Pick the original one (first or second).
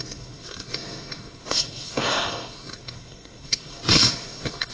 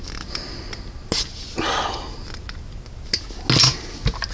second